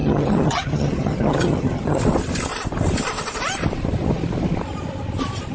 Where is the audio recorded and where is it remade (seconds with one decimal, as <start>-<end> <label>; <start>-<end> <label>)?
0.0-2.0 remade; 2.0-5.5 recorded